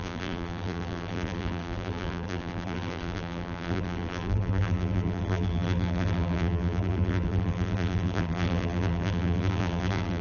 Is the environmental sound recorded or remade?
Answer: remade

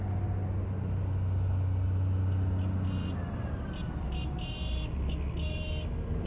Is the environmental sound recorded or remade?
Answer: recorded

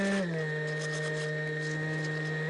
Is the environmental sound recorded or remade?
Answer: recorded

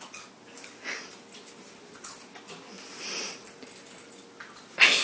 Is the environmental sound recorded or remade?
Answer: recorded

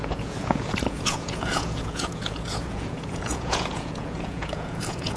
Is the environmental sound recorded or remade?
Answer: remade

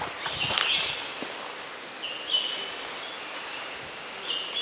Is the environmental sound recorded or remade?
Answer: recorded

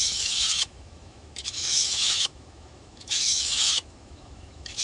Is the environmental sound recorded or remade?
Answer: remade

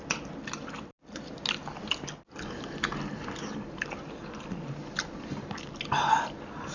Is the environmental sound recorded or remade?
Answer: recorded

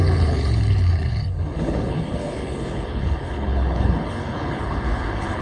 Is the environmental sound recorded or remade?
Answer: remade